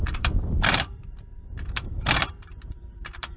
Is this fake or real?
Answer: fake